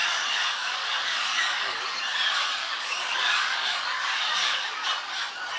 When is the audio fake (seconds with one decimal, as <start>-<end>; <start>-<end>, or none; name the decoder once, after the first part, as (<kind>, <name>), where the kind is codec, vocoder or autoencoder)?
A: 0.0-1.8 (codec, DAC); 2.6-4.9